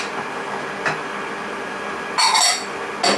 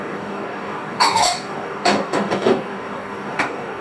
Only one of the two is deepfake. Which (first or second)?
second